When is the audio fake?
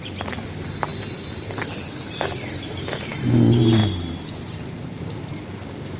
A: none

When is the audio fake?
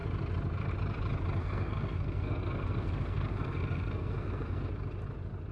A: 1.4-4.7 (codec, SNAC)